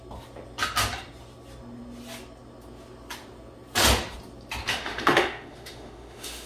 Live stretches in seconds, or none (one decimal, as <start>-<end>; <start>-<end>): 0.0-4.7